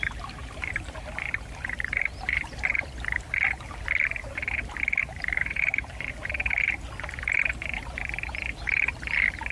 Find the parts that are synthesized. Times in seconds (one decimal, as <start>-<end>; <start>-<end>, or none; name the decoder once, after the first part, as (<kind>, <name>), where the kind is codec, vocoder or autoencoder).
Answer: 0.4-2.7 (vocoder, BigVGAN v2); 5.0-6.1